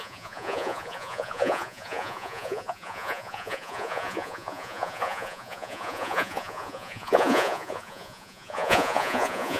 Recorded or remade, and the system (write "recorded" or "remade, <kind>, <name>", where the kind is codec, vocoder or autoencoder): remade, vocoder, Vocos